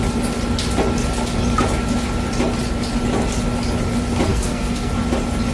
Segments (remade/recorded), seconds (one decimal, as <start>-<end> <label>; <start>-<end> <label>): 0.0-4.3 recorded; 4.3-4.9 remade; 4.9-5.5 recorded